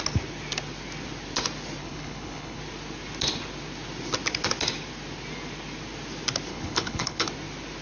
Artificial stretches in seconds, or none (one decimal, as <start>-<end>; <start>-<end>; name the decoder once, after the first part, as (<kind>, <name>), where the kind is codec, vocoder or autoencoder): 1.8-2.6 (codec, HILCodec); 6.5-7.3